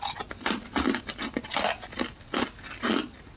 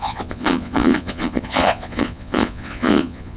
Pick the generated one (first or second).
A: second